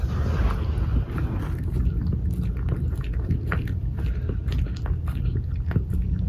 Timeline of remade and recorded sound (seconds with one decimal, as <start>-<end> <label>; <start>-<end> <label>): 0.0-0.9 recorded; 0.9-4.0 remade; 4.0-6.3 recorded